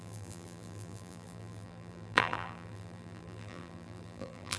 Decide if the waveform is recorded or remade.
remade